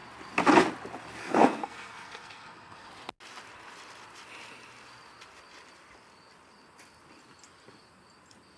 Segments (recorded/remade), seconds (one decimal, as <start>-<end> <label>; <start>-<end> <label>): 0.0-1.2 recorded; 1.2-2.9 remade; 2.9-8.6 recorded